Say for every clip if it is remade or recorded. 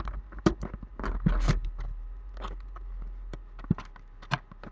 recorded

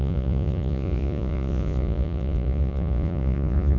remade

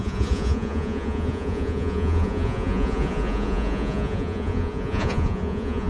remade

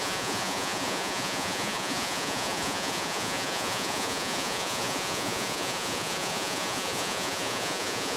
remade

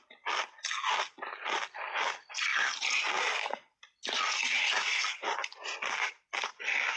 recorded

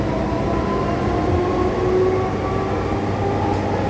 recorded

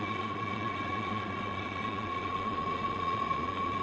remade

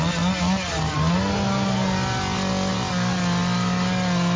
recorded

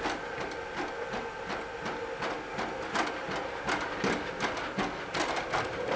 recorded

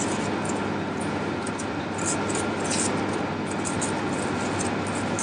recorded